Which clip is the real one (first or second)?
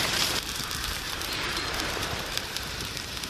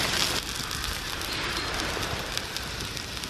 second